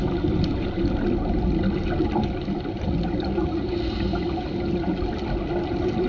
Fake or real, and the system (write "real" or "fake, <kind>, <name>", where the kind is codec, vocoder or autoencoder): real